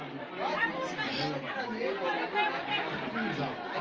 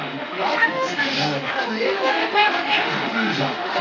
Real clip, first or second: first